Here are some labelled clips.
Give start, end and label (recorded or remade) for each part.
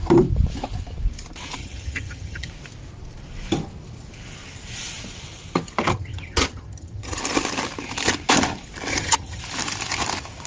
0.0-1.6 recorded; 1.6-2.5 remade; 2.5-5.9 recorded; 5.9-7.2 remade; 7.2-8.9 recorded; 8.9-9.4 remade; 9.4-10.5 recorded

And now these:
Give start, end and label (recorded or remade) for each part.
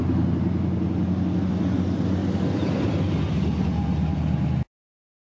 0.0-5.3 recorded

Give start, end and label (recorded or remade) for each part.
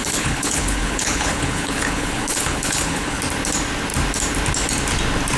0.0-3.2 remade; 3.2-5.4 recorded